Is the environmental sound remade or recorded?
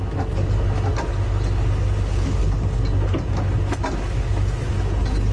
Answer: recorded